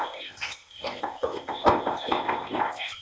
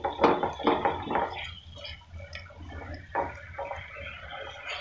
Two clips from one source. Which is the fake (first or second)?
first